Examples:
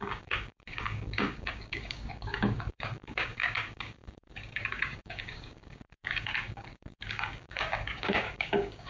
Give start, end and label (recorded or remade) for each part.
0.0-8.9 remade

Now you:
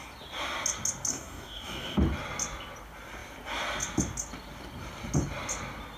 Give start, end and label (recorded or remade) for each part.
0.0-1.1 recorded; 1.1-2.0 remade; 2.0-6.0 recorded